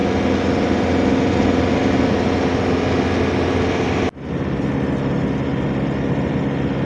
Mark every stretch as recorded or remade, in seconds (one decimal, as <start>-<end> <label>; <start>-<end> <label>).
0.0-6.8 recorded